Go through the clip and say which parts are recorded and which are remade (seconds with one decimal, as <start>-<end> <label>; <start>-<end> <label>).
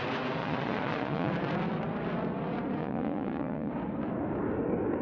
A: 0.0-0.4 recorded; 0.4-1.3 remade; 1.3-2.8 recorded; 2.8-3.7 remade; 3.7-5.0 recorded